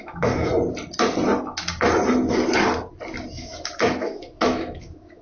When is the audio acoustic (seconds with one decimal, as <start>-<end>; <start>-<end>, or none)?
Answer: 0.5-3.3